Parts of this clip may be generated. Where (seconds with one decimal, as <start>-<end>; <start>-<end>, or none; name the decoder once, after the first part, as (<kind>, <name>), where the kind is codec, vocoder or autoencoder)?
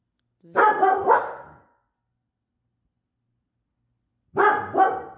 none